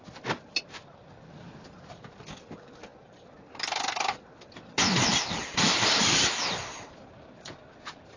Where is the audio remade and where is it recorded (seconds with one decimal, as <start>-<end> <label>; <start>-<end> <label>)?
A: 0.0-8.2 recorded